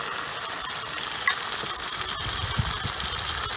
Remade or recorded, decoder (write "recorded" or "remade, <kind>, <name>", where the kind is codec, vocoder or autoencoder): recorded